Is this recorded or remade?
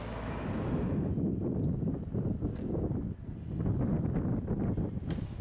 recorded